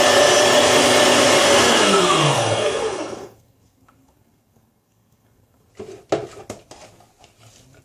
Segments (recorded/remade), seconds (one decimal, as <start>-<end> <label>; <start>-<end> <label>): 0.0-1.4 recorded; 1.4-5.7 remade; 5.7-7.8 recorded